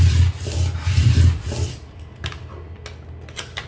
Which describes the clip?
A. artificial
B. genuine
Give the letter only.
B